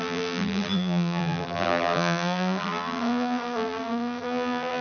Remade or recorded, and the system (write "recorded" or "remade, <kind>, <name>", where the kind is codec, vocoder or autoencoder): remade, vocoder, BigVGAN v2